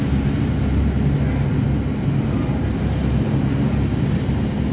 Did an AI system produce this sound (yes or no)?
no